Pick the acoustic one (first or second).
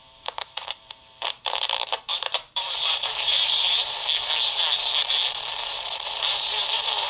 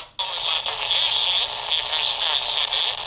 second